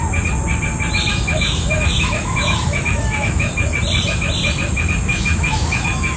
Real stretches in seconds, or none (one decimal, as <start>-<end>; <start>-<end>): 0.0-1.1; 3.5-5.1